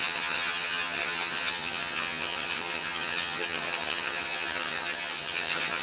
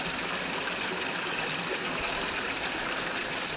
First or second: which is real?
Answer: second